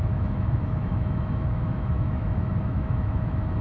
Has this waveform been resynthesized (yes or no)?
yes